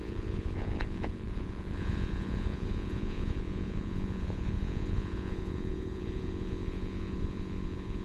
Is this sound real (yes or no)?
no